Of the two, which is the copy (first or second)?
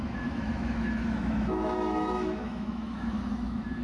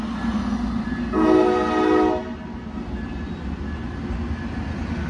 first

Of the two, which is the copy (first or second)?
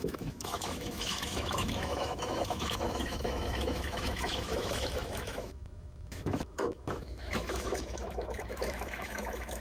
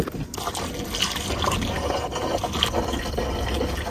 first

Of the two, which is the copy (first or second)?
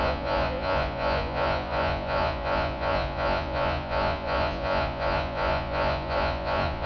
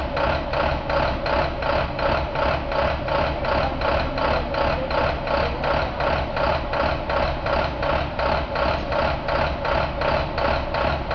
first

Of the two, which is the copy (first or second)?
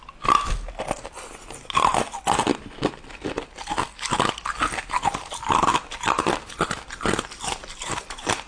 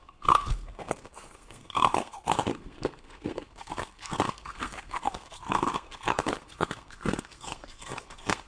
second